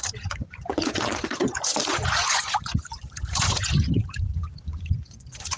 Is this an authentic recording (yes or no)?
no